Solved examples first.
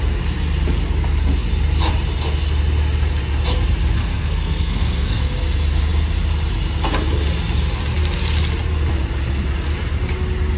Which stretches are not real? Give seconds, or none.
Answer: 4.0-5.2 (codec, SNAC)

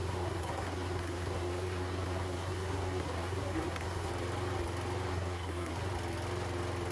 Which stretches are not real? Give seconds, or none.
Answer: 0.0-4.1 (codec, SNAC); 5.1-5.9

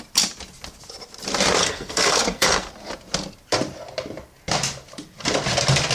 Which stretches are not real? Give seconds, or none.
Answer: 1.6-2.7 (codec, SNAC)

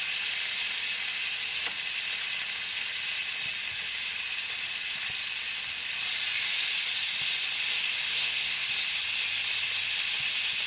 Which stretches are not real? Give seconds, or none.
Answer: 8.1-8.7 (codec, SNAC)

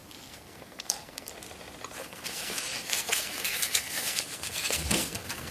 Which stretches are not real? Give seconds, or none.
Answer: 0.0-1.3 (codec, SNAC); 2.0-5.5

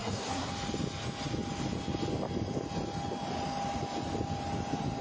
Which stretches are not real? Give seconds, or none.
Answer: 0.0-0.5 (codec, SNAC)

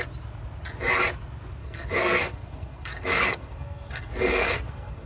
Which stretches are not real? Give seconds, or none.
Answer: 1.6-5.1 (codec, SNAC)

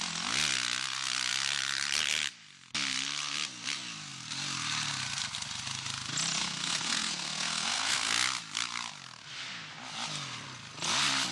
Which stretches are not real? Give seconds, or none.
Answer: 6.4-8.1 (codec, SNAC)